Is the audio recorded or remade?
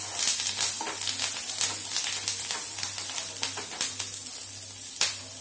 recorded